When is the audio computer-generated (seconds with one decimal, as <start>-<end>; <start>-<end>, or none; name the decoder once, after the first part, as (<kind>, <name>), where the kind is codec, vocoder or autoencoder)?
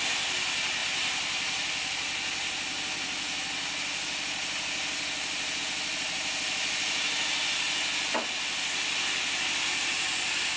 none